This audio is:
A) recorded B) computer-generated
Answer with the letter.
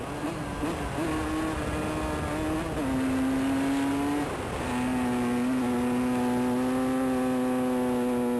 A